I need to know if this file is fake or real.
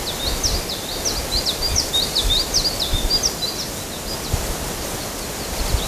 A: real